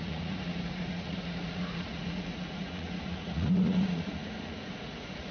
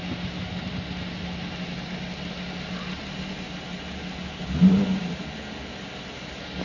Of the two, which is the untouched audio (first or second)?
second